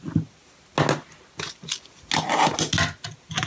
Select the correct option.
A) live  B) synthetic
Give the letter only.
A